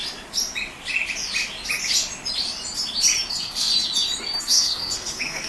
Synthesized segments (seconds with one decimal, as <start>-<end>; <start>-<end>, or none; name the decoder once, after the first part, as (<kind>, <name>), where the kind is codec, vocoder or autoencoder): 3.3-3.7 (codec, SNAC); 4.4-5.5